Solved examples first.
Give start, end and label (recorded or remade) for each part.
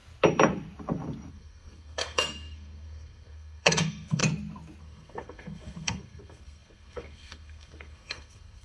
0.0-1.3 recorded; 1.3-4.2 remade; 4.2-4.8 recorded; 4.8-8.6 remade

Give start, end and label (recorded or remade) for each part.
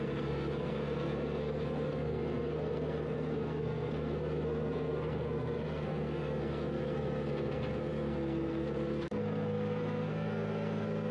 0.0-11.1 remade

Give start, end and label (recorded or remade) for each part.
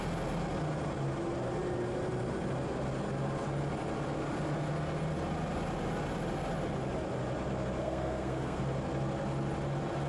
0.0-7.8 recorded; 7.8-8.6 remade; 8.6-10.1 recorded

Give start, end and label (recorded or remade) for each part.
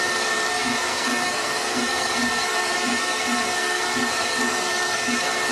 0.0-5.5 remade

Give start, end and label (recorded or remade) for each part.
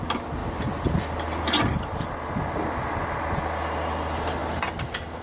0.0-5.2 recorded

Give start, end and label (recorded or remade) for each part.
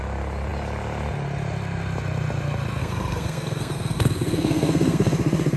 0.0-2.8 recorded; 2.8-5.6 remade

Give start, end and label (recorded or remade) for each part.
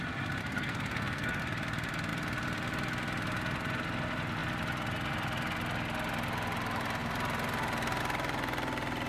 0.0-0.4 recorded; 0.4-1.4 remade; 1.4-9.1 recorded